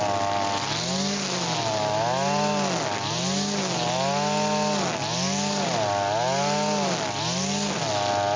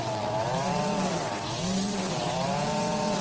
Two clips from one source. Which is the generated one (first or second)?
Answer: second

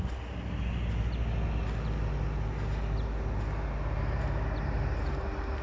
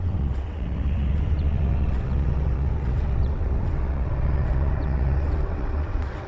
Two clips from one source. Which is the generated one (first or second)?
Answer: second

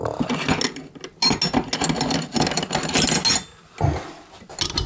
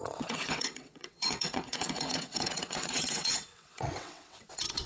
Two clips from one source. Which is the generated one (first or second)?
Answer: second